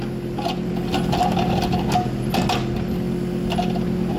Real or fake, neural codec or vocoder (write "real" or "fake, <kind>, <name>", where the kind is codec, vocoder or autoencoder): real